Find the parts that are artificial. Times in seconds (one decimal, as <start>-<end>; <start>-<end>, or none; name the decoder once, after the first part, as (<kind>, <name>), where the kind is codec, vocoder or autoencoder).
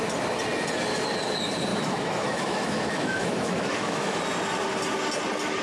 1.7-4.2 (autoencoder, DAC-VAE)